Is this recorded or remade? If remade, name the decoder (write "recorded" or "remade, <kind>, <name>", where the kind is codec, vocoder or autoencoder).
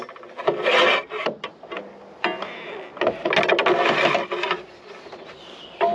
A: recorded